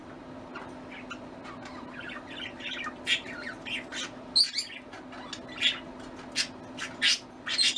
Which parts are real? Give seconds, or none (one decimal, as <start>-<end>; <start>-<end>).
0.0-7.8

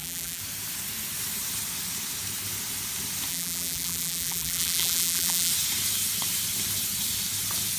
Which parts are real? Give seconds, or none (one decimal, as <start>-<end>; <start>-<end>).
0.4-3.3; 5.5-7.8

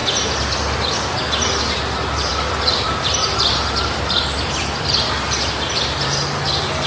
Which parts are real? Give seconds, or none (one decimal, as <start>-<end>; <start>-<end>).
0.9-2.3; 5.7-6.9

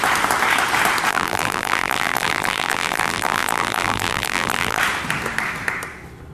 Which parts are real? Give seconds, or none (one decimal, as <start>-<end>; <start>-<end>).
0.0-1.1; 4.8-6.3

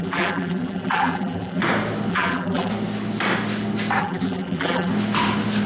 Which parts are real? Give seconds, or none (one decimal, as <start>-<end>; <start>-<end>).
1.6-2.1; 2.7-4.0; 4.9-5.7